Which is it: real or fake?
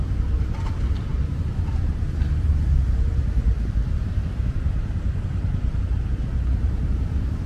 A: fake